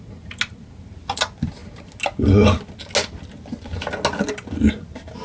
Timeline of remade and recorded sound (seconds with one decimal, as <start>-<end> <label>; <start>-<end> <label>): 0.0-5.2 recorded